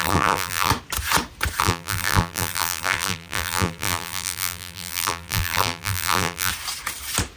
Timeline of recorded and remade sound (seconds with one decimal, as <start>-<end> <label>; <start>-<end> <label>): 0.0-0.7 remade; 0.7-1.6 recorded; 1.6-6.5 remade; 6.5-7.4 recorded